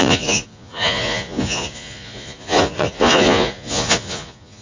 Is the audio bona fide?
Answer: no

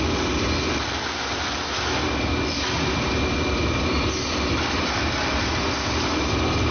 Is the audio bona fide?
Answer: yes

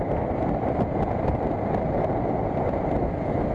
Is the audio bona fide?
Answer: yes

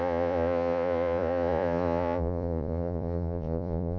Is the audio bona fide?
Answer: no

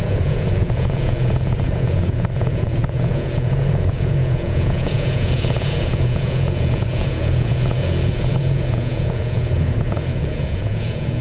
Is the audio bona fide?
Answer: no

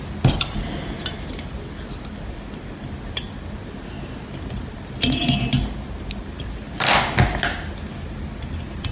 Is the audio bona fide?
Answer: yes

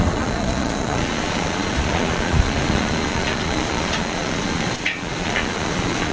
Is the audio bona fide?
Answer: no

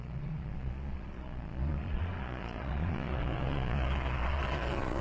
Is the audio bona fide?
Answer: no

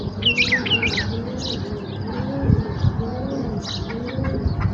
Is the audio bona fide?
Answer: yes